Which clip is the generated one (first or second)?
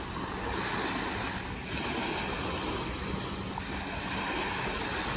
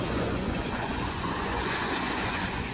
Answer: second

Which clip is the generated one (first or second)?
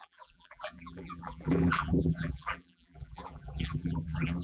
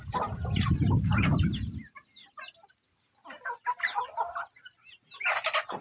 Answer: first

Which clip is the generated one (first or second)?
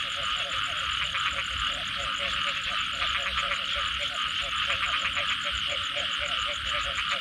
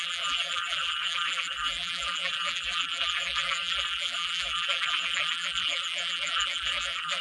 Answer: second